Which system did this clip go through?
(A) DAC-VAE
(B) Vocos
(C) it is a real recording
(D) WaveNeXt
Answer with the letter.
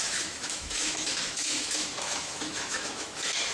A